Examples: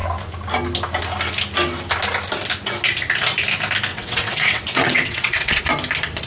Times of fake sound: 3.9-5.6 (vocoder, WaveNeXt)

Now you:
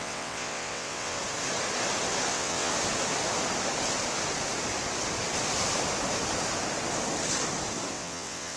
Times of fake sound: 0.0-1.2 (vocoder, WaveNeXt); 2.3-2.7; 7.9-8.6

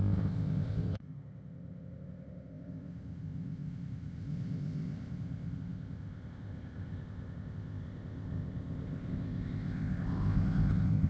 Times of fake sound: 0.0-11.1 (codec, ZipCodec)

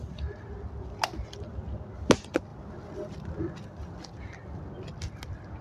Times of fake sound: none

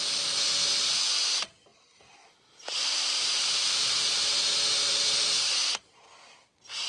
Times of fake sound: 1.7-5.8 (vocoder, BigVGAN v2)

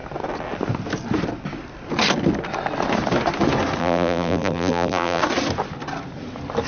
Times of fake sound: 3.8-5.2 (vocoder, BigVGAN v2)

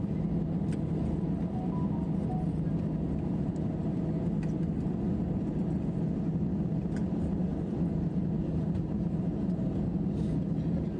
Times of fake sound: 7.5-8.4 (vocoder, BigVGAN v2)

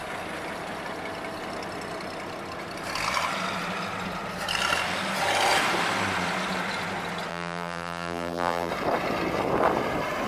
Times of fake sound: 7.3-8.7 (vocoder, BigVGAN v2)